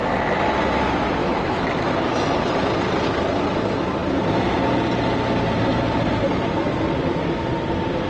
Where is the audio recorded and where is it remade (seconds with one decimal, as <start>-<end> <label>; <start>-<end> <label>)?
0.0-1.2 recorded; 1.2-2.5 remade; 2.5-8.1 recorded